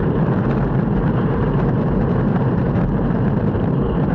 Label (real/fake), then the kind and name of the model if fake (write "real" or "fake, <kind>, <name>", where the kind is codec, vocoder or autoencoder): fake, vocoder, BigVGAN v2